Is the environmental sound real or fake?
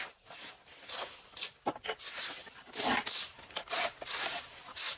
real